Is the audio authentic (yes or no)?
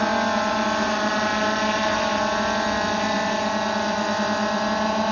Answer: yes